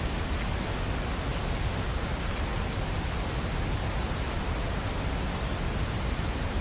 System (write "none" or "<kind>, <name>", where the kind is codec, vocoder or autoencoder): none